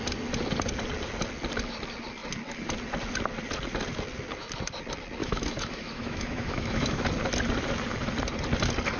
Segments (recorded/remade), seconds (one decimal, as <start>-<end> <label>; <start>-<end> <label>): 0.0-5.2 recorded; 5.2-7.0 remade; 7.0-9.0 recorded